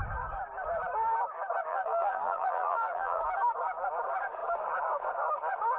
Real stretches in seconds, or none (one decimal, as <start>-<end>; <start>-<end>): 0.0-1.7; 3.2-5.8